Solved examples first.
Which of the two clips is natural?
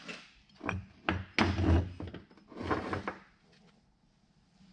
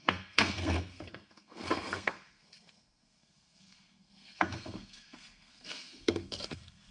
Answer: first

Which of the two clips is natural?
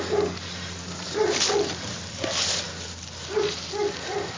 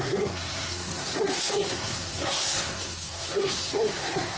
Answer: first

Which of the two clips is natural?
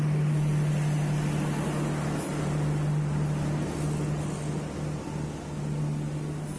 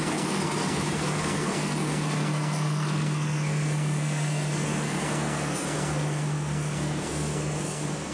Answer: first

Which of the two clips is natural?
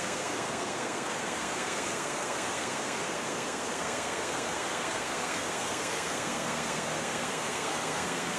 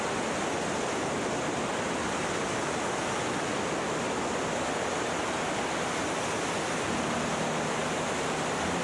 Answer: second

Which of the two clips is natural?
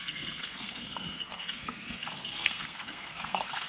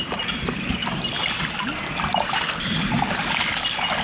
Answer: second